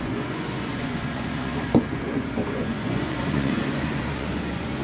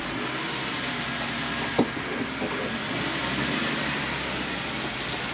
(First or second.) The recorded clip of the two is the second